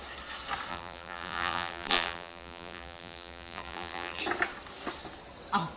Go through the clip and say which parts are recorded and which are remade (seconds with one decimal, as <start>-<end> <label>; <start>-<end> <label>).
0.0-0.7 recorded; 0.7-4.2 remade; 4.2-5.8 recorded